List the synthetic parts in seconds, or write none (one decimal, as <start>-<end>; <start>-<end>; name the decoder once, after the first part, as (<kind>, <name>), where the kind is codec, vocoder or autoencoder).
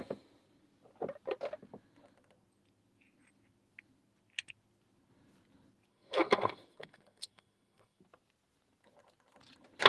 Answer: 5.9-8.0 (codec, SNAC)